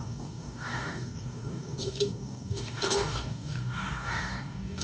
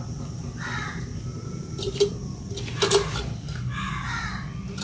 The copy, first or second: first